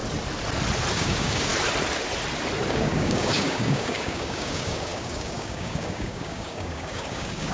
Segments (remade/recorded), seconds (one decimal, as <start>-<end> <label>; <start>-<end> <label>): 0.0-0.9 recorded; 0.9-1.5 remade; 1.5-2.7 recorded; 2.7-7.5 remade